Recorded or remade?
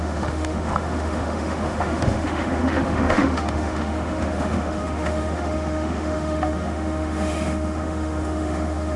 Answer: remade